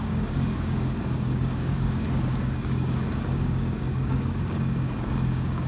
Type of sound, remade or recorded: remade